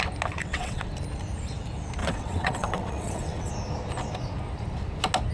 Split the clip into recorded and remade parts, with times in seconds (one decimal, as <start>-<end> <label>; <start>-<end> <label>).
0.0-0.4 recorded; 0.4-0.9 remade; 0.9-2.0 recorded; 2.0-3.5 remade; 3.5-5.3 recorded